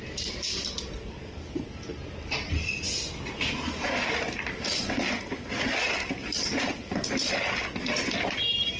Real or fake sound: real